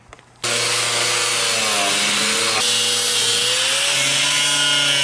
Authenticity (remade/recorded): recorded